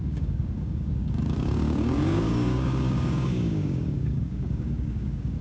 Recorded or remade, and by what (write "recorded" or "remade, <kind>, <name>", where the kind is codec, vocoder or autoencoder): remade, codec, DAC